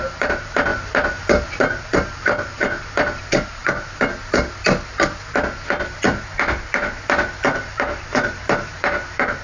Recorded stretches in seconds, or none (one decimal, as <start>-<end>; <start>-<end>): 3.6-7.6